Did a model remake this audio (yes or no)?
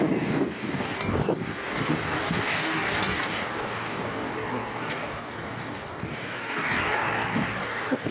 yes